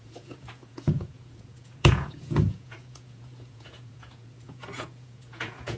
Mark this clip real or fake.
fake